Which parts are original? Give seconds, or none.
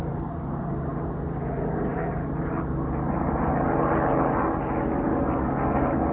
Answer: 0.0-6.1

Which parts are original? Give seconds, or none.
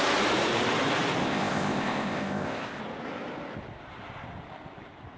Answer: 0.0-1.2; 2.8-5.2